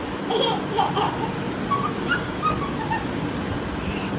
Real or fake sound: real